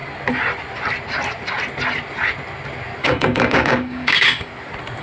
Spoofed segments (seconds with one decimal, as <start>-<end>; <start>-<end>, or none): 3.0-4.5